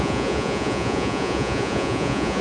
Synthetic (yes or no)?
yes